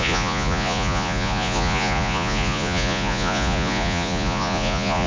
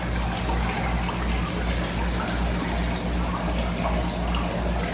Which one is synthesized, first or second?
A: first